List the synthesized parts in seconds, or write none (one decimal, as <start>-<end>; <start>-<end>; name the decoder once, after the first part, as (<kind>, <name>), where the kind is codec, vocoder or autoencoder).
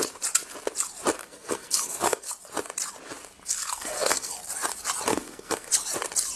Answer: 1.2-2.3 (codec, SNAC); 3.5-4.5; 5.1-5.7